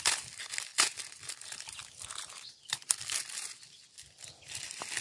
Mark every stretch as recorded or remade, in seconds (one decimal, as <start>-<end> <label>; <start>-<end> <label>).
0.0-5.0 recorded